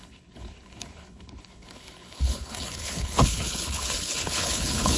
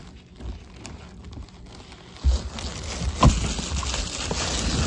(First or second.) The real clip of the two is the second